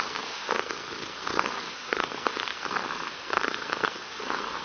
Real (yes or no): no